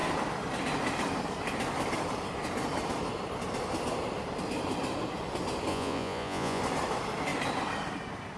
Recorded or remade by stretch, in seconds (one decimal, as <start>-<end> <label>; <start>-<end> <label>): 0.0-5.7 recorded; 5.7-6.6 remade; 6.6-8.4 recorded